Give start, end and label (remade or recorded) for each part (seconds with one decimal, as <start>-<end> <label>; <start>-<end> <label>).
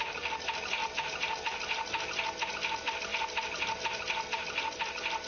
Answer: 0.0-5.3 recorded